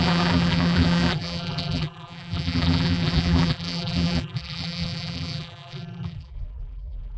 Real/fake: fake